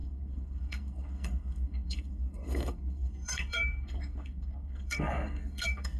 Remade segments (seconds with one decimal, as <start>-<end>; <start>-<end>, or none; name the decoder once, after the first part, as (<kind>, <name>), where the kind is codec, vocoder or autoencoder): 0.0-6.0 (codec, SNAC)